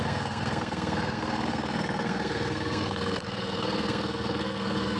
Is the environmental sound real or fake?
fake